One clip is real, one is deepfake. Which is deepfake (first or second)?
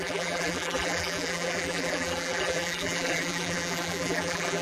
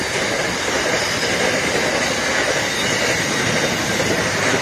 first